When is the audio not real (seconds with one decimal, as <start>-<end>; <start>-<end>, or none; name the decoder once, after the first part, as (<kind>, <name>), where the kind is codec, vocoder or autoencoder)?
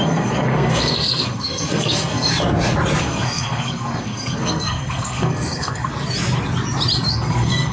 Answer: 0.0-2.3 (codec, SNAC); 3.0-5.9; 7.1-7.7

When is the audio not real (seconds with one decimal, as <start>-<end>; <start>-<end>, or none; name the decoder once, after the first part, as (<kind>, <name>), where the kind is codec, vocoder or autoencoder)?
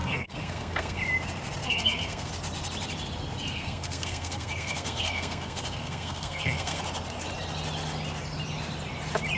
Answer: 0.0-1.0 (codec, SNAC); 1.6-2.3; 3.4-6.8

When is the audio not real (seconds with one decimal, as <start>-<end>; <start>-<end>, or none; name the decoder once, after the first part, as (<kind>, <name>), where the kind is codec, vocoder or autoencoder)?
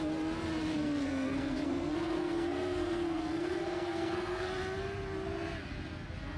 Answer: 0.7-4.5 (codec, SNAC)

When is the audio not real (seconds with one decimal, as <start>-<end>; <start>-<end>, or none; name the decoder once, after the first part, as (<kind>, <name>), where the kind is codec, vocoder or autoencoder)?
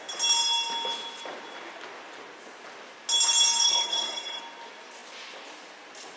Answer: 3.6-4.4 (codec, SNAC)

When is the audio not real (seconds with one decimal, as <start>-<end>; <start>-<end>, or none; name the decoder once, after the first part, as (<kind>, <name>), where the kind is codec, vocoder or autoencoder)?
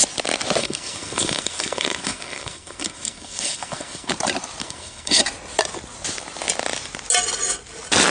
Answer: 0.6-4.1 (codec, SNAC); 4.6-5.2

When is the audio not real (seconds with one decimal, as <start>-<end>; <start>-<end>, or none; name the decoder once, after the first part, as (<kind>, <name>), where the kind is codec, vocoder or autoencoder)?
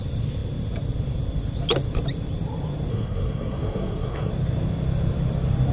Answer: 2.9-4.3 (codec, SNAC)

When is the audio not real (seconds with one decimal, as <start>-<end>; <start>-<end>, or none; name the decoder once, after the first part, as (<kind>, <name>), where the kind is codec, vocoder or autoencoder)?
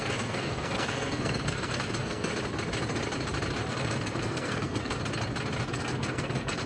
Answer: 0.0-2.3 (codec, SNAC); 3.7-5.0; 5.6-6.7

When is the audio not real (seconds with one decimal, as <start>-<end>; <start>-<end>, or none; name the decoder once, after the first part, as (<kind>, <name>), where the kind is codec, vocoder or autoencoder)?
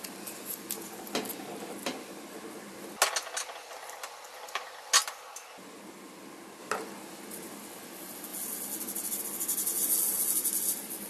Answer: none